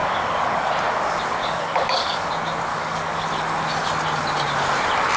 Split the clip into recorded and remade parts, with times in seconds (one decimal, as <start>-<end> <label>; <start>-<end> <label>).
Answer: 0.0-0.7 remade; 0.7-1.4 recorded; 1.4-2.3 remade; 2.3-2.7 recorded; 2.7-3.3 remade; 3.3-5.2 recorded